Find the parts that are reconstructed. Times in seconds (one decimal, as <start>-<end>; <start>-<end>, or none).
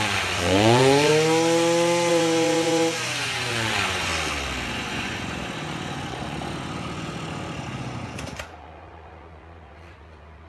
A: 0.0-1.1; 2.1-4.1; 4.7-10.5